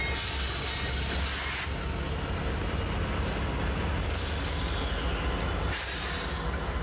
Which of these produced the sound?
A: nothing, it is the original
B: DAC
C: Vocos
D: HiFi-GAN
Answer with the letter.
A